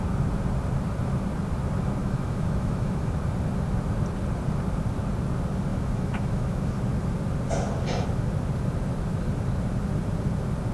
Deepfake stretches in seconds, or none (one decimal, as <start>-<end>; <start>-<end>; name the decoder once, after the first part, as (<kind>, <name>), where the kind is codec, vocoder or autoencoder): 2.0-3.1 (autoencoder, DAC-VAE); 5.7-6.7